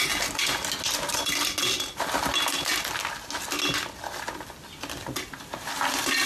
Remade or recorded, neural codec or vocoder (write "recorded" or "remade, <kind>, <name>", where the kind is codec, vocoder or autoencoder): recorded